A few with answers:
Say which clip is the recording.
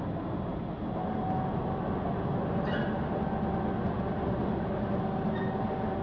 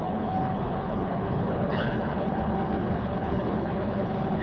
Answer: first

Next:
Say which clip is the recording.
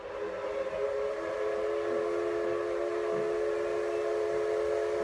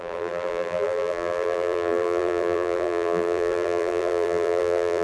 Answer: first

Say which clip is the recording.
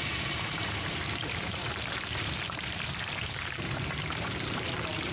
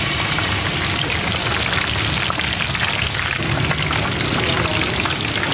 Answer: second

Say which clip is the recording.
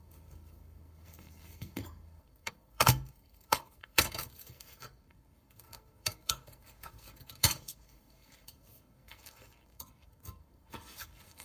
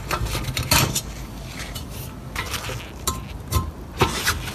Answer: second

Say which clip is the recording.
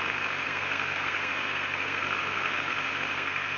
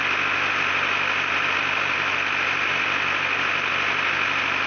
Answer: second